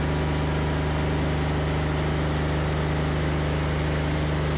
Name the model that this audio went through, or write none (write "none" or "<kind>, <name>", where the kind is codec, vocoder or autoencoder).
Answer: none